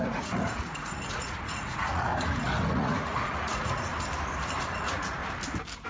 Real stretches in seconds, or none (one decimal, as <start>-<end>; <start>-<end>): 2.1-2.7; 3.9-4.6; 5.2-5.9